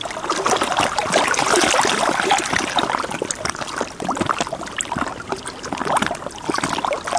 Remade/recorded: recorded